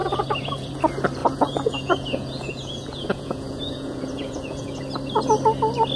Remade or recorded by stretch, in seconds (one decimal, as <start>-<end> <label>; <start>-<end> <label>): 0.0-0.7 remade; 0.7-1.2 recorded; 1.2-4.8 remade; 4.8-6.0 recorded

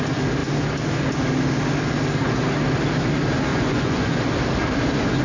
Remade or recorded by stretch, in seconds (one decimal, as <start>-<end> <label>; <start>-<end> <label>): 0.0-3.5 recorded; 3.5-4.2 remade; 4.2-5.2 recorded

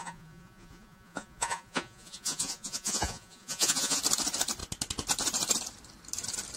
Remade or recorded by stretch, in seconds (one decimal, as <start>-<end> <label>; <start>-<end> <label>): 0.0-4.0 remade; 4.0-6.6 recorded

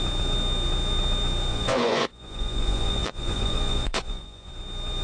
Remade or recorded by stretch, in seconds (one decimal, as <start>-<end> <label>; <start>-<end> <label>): 0.0-1.5 recorded; 1.5-4.5 remade; 4.5-5.0 recorded

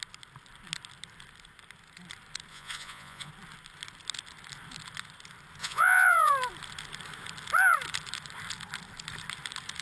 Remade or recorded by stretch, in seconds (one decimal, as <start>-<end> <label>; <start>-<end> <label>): 0.0-2.5 recorded; 2.5-3.3 remade; 3.3-5.6 recorded; 5.6-6.3 remade; 6.3-9.8 recorded

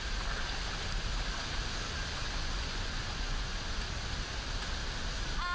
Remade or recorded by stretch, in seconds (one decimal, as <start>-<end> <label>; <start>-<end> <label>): 0.0-2.2 recorded; 2.2-3.6 remade; 3.6-5.5 recorded

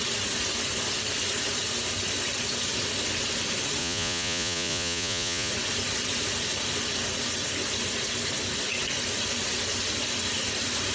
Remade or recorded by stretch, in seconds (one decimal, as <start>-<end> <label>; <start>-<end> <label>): 0.0-3.8 recorded; 3.8-5.5 remade; 5.5-10.9 recorded

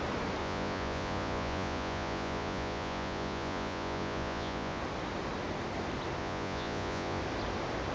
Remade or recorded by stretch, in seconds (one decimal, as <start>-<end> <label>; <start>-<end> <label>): 0.0-0.4 recorded; 0.4-4.8 remade; 4.8-6.2 recorded; 6.2-7.2 remade; 7.2-7.9 recorded